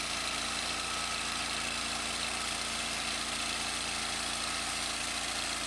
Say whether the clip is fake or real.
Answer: real